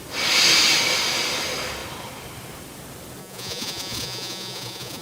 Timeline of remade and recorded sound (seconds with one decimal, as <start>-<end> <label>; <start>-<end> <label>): 0.0-3.2 recorded; 3.2-5.0 remade